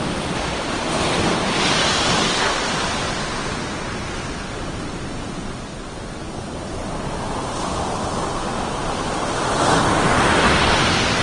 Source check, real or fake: real